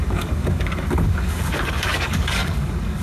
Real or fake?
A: fake